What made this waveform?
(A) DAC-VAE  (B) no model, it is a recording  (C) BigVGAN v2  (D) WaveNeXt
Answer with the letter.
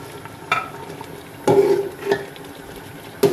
B